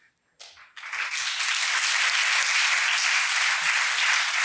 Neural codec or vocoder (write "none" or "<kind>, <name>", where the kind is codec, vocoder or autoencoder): none